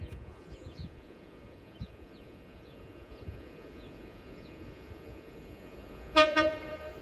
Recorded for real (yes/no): no